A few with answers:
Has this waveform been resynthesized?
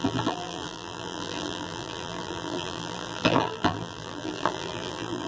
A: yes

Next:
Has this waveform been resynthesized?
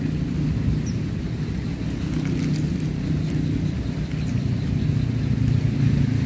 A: no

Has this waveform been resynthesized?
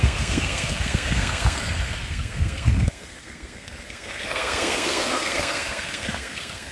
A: yes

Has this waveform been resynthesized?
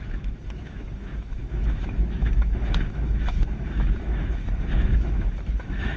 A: yes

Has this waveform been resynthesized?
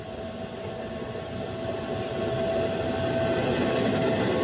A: no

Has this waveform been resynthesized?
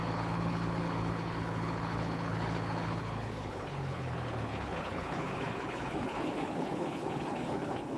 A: yes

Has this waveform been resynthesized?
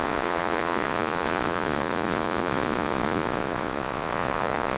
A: yes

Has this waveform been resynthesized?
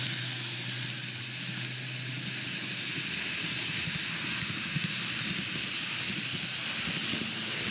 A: no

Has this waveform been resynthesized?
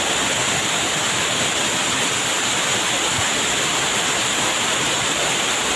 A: no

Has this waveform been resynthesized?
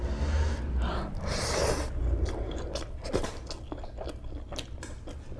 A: no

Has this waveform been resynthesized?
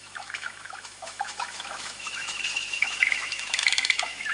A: yes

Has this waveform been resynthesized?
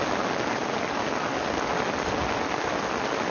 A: no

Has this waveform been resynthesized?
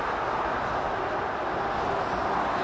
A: no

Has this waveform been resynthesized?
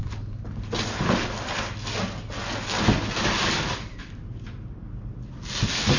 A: no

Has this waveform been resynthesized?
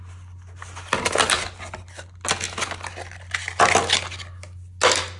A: no